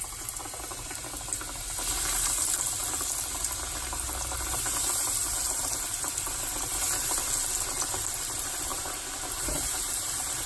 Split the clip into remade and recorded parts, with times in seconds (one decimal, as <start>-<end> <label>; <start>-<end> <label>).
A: 0.0-8.7 recorded; 8.7-9.9 remade; 9.9-10.5 recorded